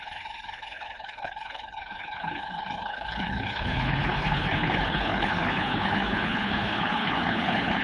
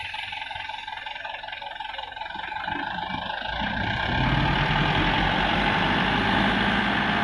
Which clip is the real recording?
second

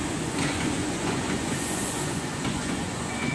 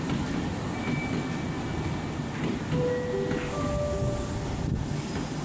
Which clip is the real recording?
second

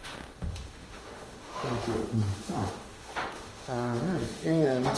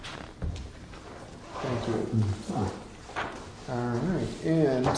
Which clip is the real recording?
second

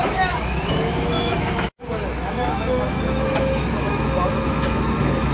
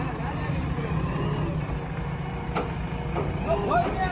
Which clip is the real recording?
second